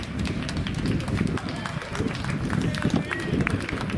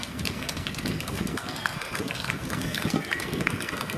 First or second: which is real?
first